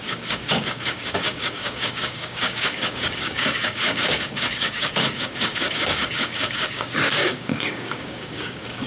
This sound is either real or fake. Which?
fake